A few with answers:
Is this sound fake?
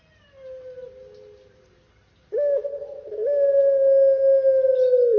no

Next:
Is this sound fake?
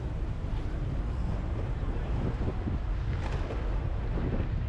no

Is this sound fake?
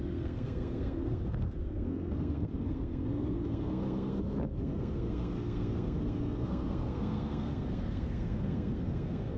yes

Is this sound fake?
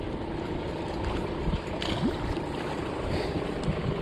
no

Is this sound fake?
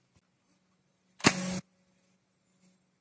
no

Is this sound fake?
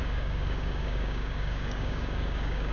yes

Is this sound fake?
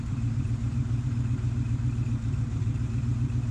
yes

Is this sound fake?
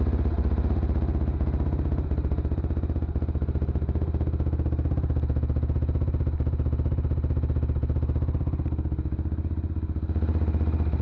no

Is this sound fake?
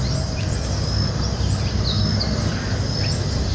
no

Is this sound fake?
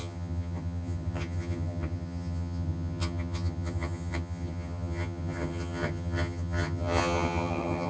yes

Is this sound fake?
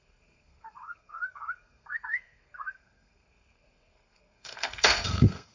yes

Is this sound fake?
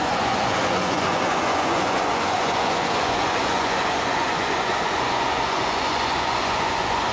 yes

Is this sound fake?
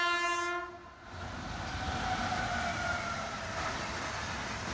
no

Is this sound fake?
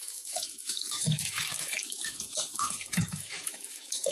yes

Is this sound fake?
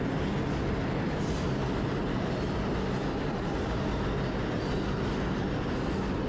no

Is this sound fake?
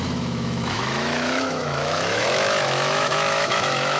yes